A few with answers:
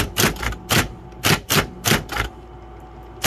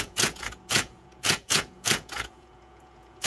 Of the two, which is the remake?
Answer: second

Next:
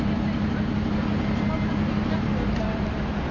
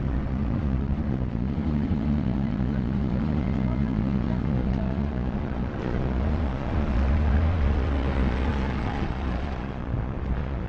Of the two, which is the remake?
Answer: second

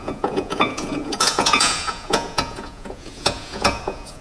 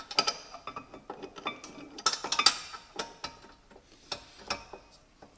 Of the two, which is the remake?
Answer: first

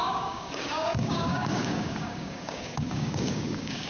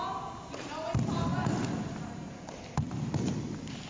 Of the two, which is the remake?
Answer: first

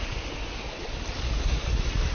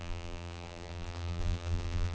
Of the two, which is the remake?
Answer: second